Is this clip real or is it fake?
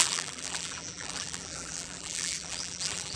fake